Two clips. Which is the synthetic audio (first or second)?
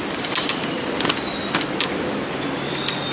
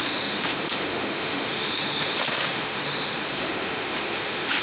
second